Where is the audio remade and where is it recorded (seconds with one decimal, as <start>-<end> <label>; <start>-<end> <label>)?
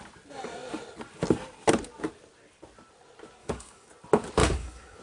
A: 0.0-3.4 recorded; 3.4-3.9 remade; 3.9-4.4 recorded; 4.4-5.0 remade